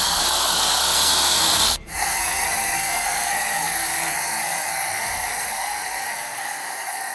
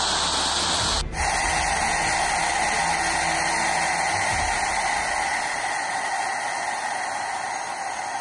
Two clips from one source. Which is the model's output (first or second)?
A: first